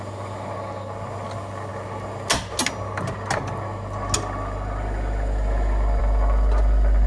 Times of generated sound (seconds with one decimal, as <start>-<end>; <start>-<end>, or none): none